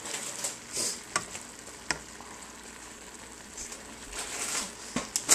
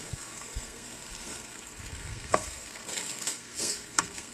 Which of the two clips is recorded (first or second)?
first